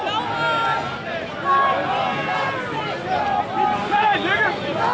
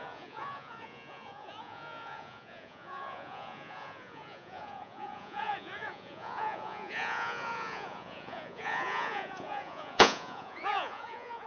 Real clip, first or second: first